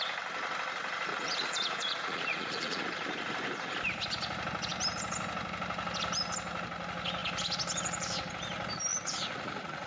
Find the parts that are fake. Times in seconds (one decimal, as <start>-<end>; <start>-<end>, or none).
1.1-2.8; 8.9-9.9